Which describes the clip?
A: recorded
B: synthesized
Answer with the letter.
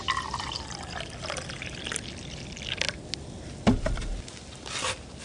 A